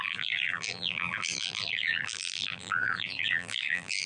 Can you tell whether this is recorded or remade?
remade